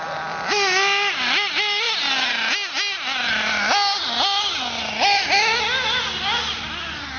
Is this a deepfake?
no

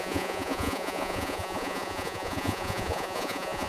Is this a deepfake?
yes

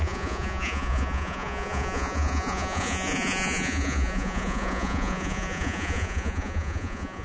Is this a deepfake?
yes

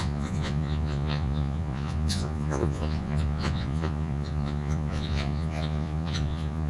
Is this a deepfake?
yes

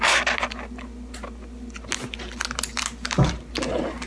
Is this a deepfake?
no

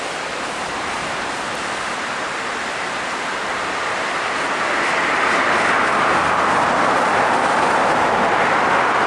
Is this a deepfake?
no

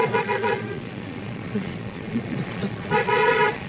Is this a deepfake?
yes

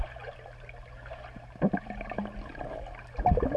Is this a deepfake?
no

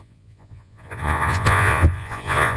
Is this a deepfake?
yes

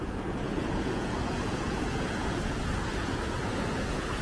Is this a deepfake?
yes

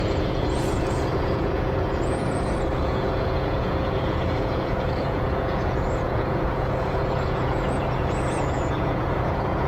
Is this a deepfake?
yes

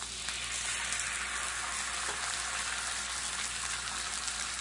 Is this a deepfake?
no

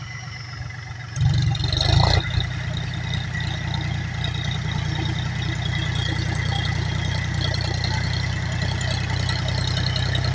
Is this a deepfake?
no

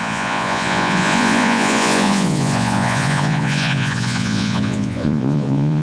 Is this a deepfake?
yes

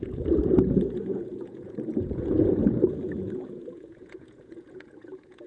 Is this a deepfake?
yes